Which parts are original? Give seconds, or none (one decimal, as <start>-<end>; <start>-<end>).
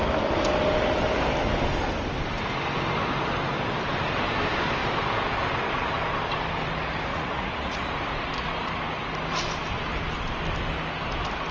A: 0.0-7.1; 7.9-11.5